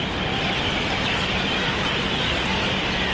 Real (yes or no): yes